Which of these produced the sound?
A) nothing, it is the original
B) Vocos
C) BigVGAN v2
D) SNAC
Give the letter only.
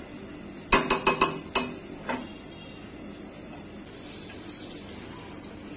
A